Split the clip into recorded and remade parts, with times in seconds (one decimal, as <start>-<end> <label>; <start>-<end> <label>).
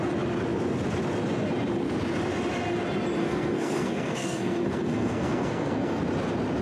0.0-3.2 recorded; 3.2-6.0 remade; 6.0-6.6 recorded